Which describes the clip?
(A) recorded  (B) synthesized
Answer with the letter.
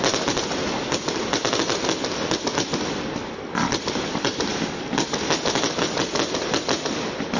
A